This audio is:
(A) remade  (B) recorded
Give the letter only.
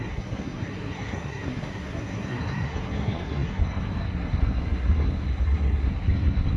A